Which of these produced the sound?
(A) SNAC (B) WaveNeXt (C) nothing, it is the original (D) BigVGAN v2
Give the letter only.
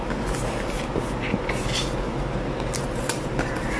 C